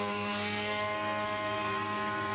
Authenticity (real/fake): fake